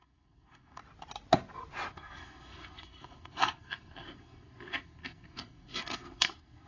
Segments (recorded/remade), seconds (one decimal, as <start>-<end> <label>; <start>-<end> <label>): 0.0-0.8 remade; 0.8-1.9 recorded; 1.9-6.7 remade